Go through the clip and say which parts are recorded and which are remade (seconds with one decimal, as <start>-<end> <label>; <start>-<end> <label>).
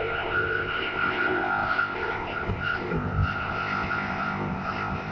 0.0-5.1 remade